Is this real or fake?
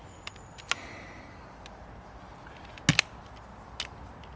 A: real